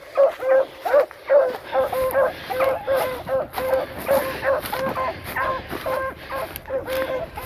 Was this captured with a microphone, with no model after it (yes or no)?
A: yes